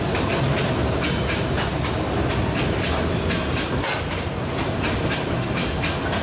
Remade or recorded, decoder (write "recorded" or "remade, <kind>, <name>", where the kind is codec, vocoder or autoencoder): recorded